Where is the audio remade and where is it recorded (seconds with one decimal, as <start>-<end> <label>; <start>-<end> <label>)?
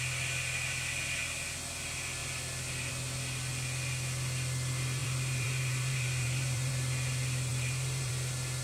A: 0.0-5.0 recorded; 5.0-6.7 remade; 6.7-7.5 recorded; 7.5-8.1 remade; 8.1-8.6 recorded